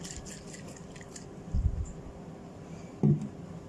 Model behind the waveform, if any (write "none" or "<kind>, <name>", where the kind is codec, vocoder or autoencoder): none